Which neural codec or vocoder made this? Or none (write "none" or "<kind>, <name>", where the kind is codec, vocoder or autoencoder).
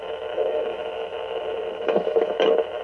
autoencoder, DAC-VAE